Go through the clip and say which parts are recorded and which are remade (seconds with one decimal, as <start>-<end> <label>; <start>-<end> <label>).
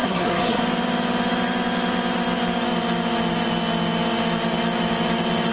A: 0.0-0.6 remade; 0.6-5.5 recorded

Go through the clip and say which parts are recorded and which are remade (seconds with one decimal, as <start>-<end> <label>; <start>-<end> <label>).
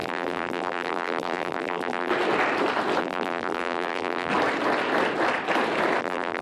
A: 0.0-2.1 remade; 2.1-3.0 recorded; 3.0-4.3 remade; 4.3-6.0 recorded; 6.0-6.4 remade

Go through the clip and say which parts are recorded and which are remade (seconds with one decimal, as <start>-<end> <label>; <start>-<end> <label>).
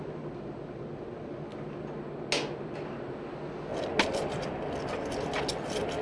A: 0.0-6.0 recorded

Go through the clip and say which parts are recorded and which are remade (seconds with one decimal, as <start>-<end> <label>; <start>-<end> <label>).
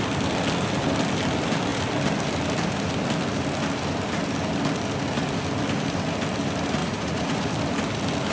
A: 0.0-6.8 recorded; 6.8-7.5 remade; 7.5-8.3 recorded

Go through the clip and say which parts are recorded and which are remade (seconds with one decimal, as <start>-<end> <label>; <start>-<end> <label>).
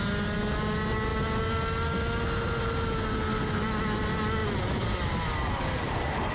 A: 0.0-6.3 recorded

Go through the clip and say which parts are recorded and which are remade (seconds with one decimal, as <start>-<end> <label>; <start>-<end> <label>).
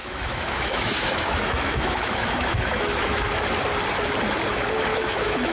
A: 0.0-3.3 remade; 3.3-4.9 recorded; 4.9-5.5 remade